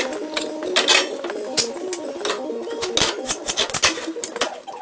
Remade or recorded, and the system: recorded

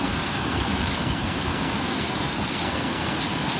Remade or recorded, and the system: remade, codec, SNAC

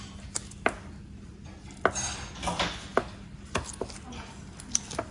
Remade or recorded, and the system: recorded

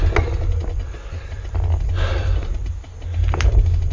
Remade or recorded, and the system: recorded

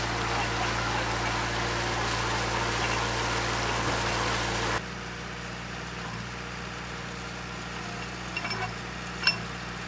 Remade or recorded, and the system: recorded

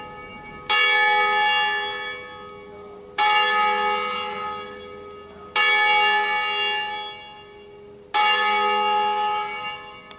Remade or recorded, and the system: recorded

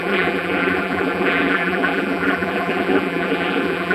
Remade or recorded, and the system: remade, vocoder, BigVGAN v2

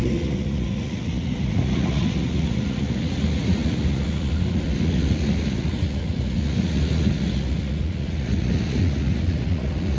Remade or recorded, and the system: remade, vocoder, Vocos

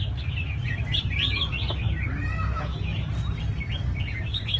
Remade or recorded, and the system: recorded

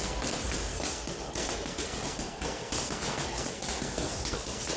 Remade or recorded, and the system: remade, codec, SNAC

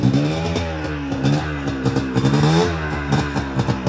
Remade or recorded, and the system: recorded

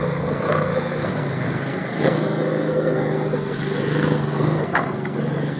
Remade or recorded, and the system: remade, codec, SNAC